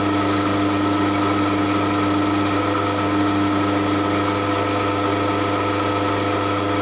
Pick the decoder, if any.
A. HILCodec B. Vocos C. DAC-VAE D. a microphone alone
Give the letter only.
D